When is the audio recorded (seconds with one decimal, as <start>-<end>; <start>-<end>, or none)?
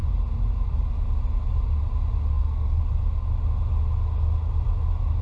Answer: 0.0-2.3; 2.8-5.2